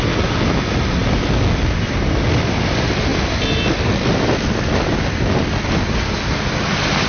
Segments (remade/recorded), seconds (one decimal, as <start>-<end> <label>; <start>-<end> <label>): 0.0-7.1 recorded